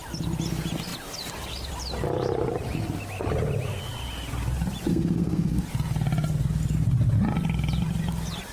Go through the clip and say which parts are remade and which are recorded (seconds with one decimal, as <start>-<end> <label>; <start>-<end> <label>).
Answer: 0.0-4.9 recorded; 4.9-5.6 remade; 5.6-8.5 recorded